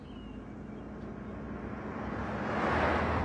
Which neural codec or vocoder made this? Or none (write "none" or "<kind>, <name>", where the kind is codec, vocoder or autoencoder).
none